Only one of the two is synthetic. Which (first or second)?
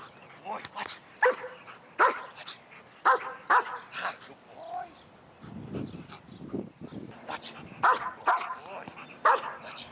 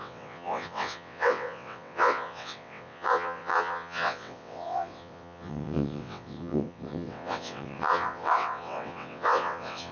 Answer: second